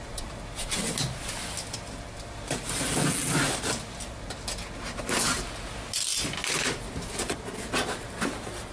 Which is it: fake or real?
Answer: real